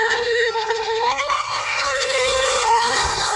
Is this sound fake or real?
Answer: fake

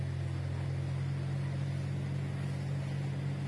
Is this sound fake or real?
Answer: real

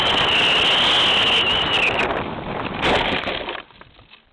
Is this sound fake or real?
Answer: real